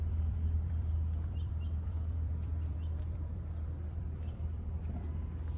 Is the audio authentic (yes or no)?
no